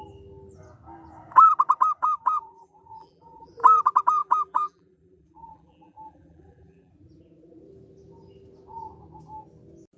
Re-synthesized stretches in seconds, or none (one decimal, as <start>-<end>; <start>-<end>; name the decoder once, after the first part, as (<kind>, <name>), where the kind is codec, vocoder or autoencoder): 2.0-3.5 (vocoder, BigVGAN v2); 4.2-6.9